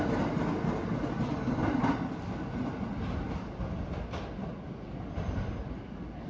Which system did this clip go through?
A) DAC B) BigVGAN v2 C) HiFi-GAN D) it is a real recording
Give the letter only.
D